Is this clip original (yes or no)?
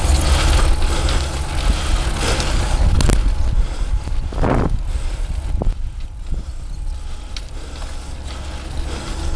yes